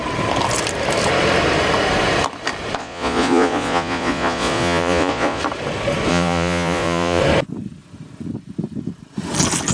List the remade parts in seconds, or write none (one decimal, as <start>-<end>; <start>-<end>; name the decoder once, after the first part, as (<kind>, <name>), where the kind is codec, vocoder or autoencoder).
2.8-5.4 (vocoder, Vocos); 6.1-7.2